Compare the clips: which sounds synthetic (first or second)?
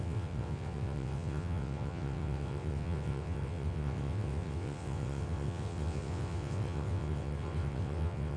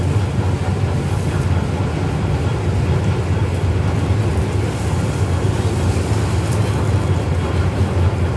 first